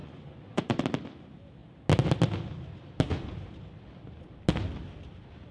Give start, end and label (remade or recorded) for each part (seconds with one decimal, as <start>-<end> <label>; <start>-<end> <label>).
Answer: 0.0-0.8 remade; 0.8-5.5 recorded

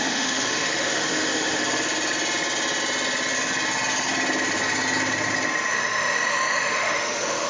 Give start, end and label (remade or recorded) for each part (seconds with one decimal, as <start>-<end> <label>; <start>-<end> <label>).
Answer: 0.0-1.6 remade; 1.6-5.7 recorded; 5.7-7.5 remade

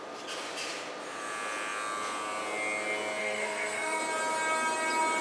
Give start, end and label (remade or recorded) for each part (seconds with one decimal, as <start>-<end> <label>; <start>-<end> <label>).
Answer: 0.0-3.2 recorded; 3.2-4.0 remade; 4.0-5.2 recorded

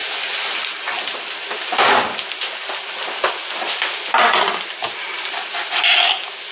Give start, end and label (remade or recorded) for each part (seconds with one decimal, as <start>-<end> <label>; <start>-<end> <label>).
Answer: 0.0-6.5 recorded